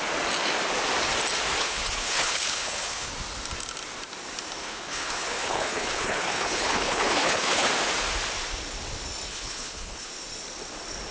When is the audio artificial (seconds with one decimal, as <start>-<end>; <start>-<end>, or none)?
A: 1.6-3.1; 4.6-7.7; 9.3-10.1